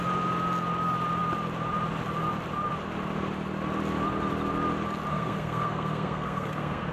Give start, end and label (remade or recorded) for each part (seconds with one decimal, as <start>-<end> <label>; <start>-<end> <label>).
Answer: 0.0-5.1 recorded; 5.1-6.9 remade